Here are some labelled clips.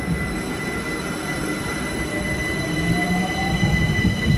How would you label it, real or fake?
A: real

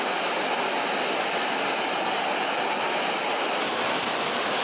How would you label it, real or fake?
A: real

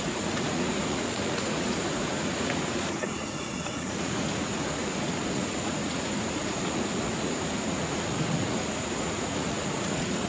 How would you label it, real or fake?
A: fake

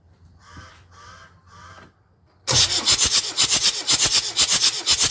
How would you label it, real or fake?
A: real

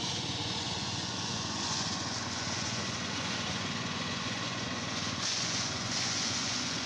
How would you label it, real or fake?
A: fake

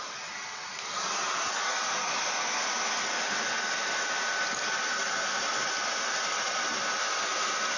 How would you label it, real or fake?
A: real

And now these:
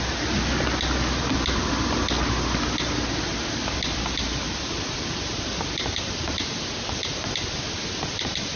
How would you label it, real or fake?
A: real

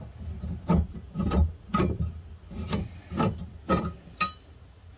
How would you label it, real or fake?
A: real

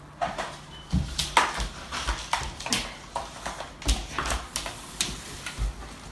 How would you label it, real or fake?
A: real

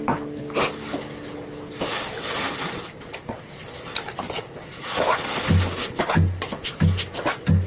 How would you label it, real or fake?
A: real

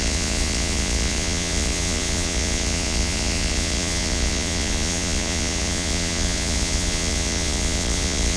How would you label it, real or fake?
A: fake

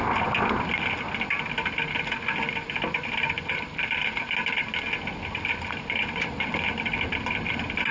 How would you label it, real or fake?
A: real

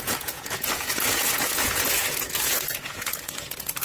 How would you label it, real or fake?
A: fake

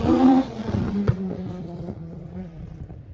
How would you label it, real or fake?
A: fake